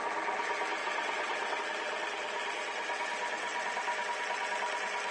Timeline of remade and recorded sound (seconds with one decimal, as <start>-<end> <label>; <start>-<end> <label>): 0.0-0.8 recorded; 0.8-1.6 remade; 1.6-5.1 recorded